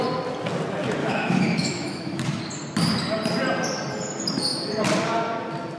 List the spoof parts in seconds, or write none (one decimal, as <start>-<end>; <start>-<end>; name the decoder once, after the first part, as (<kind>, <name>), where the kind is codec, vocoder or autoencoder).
1.0-2.4 (autoencoder, DAC-VAE)